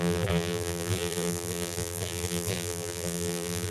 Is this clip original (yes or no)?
no